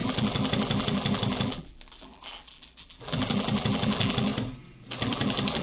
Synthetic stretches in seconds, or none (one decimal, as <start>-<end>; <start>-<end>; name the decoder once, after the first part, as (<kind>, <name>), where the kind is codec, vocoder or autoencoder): 0.0-4.3 (vocoder, BigVGAN v2); 5.0-5.6